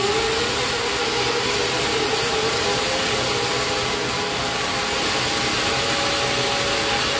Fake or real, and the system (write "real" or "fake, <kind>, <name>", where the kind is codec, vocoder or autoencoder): real